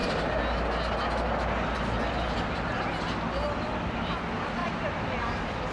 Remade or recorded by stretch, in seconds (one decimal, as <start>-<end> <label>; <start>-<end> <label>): 0.0-5.7 recorded